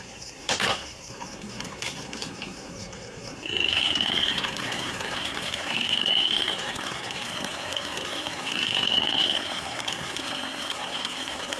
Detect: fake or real fake